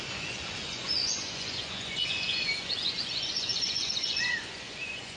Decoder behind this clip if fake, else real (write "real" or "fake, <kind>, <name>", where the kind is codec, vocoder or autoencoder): fake, vocoder, Vocos